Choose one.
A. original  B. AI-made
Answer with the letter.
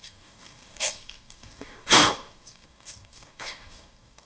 B